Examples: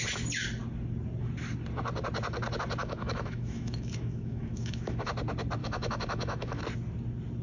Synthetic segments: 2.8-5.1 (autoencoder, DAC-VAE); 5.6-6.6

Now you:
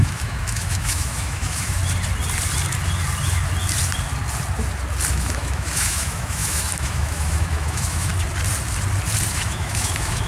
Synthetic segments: 0.0-1.8 (autoencoder, DAC-VAE); 5.1-8.1; 9.3-10.3

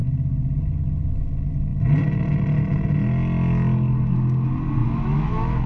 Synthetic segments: 4.8-5.7 (autoencoder, DAC-VAE)

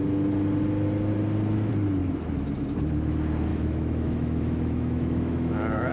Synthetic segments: 3.5-5.9 (autoencoder, DAC-VAE)

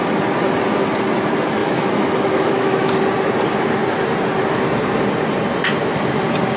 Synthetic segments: 1.6-2.9 (autoencoder, DAC-VAE)

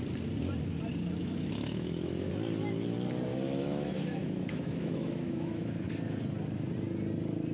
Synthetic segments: 1.2-2.3 (autoencoder, DAC-VAE); 3.3-5.8